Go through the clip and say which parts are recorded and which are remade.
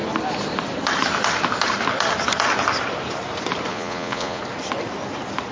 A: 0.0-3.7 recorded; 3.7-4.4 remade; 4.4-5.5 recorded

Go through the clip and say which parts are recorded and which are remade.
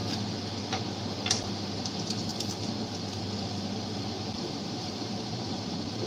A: 0.0-1.4 recorded; 1.4-2.3 remade; 2.3-4.1 recorded; 4.1-6.1 remade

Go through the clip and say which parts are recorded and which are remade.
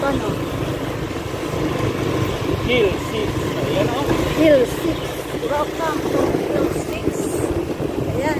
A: 0.0-8.4 recorded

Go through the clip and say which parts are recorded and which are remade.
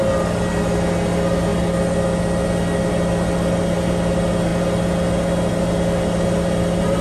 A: 0.0-7.0 recorded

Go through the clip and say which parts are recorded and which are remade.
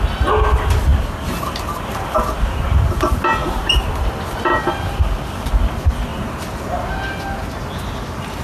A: 0.0-3.4 recorded; 3.4-3.9 remade; 3.9-6.1 recorded; 6.1-6.8 remade; 6.8-8.4 recorded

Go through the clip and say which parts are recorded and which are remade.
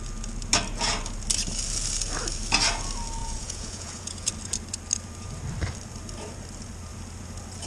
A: 0.0-3.2 recorded; 3.2-4.3 remade; 4.3-7.7 recorded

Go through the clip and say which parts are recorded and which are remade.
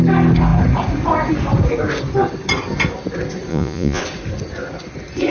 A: 0.0-3.5 recorded; 3.5-4.0 remade; 4.0-5.3 recorded